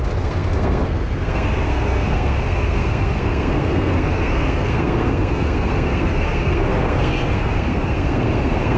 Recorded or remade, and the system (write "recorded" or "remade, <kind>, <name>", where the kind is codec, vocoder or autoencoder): remade, codec, SNAC